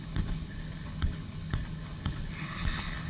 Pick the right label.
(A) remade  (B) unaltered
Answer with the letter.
A